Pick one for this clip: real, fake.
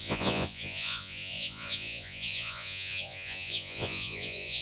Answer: fake